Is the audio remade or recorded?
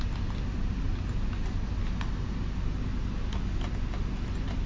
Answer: recorded